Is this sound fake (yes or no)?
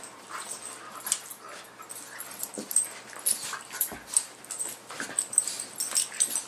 no